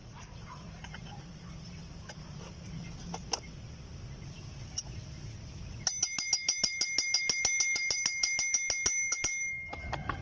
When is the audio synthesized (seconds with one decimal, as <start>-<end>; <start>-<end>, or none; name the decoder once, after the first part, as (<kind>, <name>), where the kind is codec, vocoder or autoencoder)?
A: 0.0-1.0 (vocoder, Vocos)